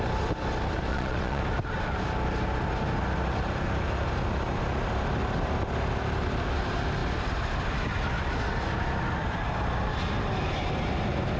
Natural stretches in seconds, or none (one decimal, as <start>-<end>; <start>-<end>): 0.0-0.9; 1.4-11.4